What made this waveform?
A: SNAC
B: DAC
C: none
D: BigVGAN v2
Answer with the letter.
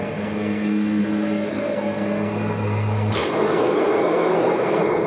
A